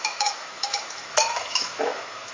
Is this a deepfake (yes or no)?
yes